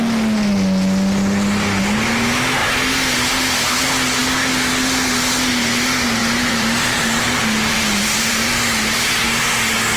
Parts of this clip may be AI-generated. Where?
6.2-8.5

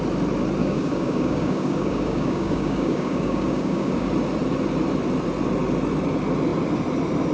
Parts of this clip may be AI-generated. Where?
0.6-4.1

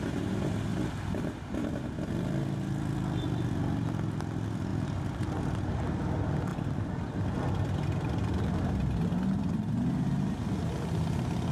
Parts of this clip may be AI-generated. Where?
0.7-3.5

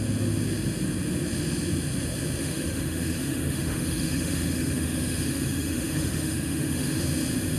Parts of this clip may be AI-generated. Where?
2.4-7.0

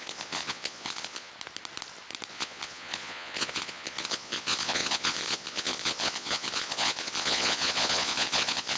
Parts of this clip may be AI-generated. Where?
0.0-1.3; 2.3-8.8